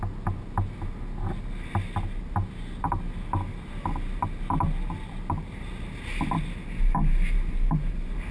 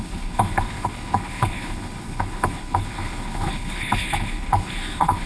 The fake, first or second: second